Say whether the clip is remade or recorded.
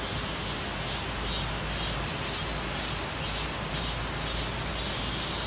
recorded